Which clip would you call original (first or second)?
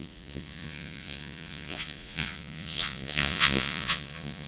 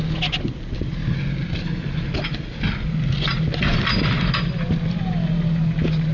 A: second